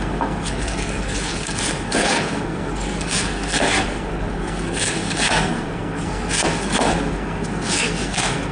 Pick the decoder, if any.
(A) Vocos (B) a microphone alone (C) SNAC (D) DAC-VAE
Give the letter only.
C